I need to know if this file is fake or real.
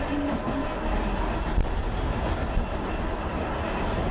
real